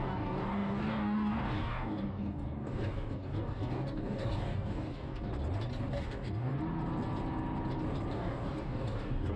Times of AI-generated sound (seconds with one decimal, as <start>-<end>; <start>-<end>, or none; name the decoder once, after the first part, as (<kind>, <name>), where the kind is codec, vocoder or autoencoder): 0.0-5.3 (codec, DAC); 5.9-6.5; 8.1-9.4